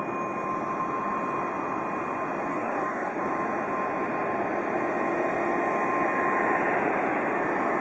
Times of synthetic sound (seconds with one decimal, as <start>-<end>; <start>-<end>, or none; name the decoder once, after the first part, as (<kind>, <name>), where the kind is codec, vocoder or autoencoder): 2.5-3.2 (codec, DAC)